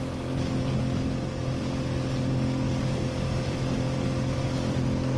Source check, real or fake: real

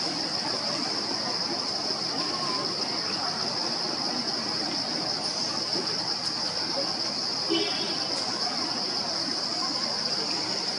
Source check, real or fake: real